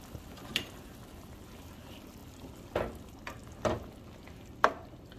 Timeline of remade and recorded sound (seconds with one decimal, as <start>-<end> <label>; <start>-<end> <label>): 0.0-5.2 recorded